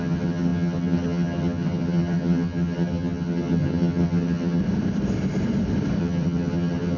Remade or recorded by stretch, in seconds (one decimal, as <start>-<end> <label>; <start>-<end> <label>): 0.0-4.6 remade; 4.6-6.0 recorded; 6.0-7.0 remade

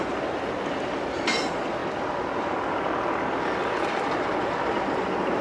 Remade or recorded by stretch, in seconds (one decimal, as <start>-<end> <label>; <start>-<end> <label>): 0.0-5.4 recorded